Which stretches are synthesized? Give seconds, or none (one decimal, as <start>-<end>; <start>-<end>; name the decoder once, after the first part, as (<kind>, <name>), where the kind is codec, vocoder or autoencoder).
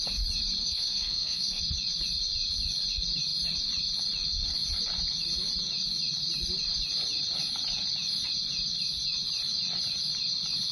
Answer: 0.6-1.6 (codec, SNAC)